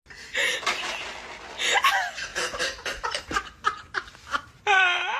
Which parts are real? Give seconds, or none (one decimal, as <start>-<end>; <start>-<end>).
0.0-2.3